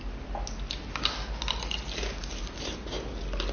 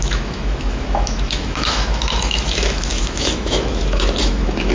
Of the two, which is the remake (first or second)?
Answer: second